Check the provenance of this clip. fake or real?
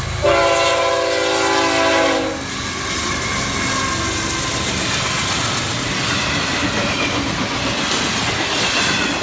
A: real